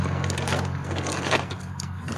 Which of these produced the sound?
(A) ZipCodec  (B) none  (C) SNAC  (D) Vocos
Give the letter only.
C